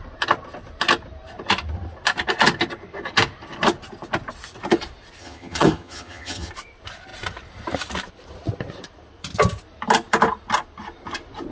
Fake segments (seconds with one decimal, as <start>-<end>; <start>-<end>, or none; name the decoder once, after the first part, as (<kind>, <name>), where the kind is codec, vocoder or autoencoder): 5.2-6.5 (vocoder, HiFi-GAN)